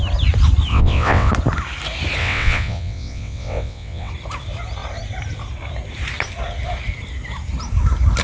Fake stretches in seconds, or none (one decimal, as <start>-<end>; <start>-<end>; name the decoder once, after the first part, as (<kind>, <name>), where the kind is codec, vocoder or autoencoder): 0.7-1.3 (vocoder, WaveNeXt); 2.2-4.1